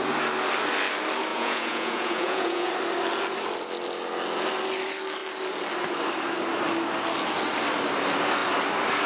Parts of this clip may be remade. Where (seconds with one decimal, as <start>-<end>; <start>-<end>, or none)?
1.3-2.7